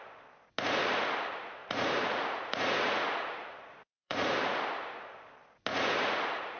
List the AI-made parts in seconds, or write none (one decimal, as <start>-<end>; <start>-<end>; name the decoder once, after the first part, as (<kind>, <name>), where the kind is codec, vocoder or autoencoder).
1.6-4.5 (vocoder, Vocos); 5.7-6.6